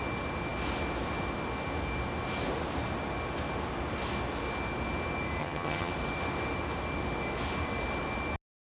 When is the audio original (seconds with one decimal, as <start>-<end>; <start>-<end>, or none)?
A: 0.0-5.4; 5.9-8.6